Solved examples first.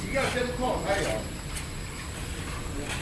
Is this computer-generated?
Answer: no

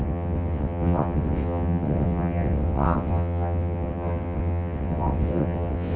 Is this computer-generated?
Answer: yes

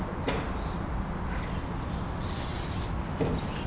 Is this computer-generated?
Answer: no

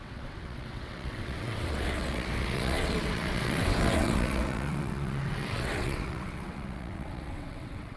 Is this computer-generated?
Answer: yes